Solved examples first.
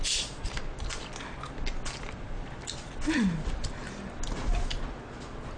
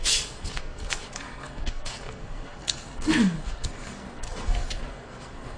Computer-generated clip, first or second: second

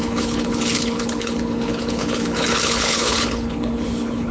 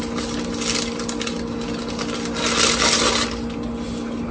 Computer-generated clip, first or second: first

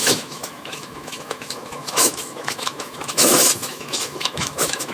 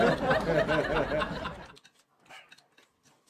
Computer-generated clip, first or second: first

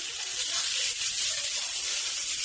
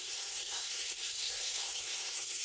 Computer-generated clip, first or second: second